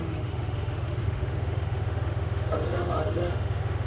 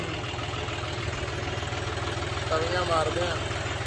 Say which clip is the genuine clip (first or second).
second